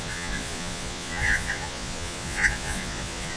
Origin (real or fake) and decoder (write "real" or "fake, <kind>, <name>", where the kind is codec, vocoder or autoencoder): fake, vocoder, Vocos